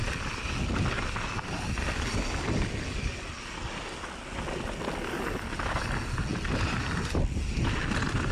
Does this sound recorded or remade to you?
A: recorded